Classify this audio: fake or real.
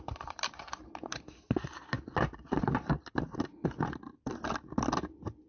real